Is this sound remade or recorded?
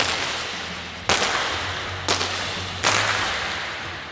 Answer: recorded